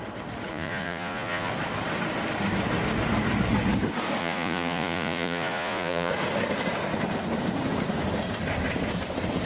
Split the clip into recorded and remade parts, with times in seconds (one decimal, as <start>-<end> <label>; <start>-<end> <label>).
0.0-0.5 recorded; 0.5-1.5 remade; 1.5-4.2 recorded; 4.2-6.1 remade; 6.1-9.5 recorded

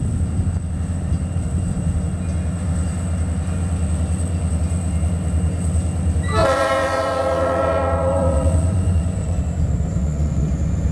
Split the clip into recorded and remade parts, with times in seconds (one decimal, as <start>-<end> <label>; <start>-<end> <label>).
0.0-6.4 recorded; 6.4-9.4 remade; 9.4-9.9 recorded; 9.9-10.5 remade; 10.5-10.9 recorded

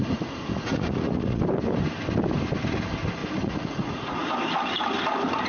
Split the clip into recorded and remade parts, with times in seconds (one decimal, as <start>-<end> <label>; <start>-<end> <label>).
0.0-1.4 remade; 1.4-3.2 recorded; 3.2-4.3 remade; 4.3-5.5 recorded